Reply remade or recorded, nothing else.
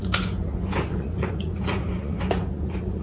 remade